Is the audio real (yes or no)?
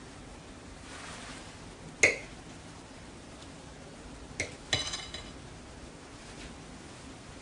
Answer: yes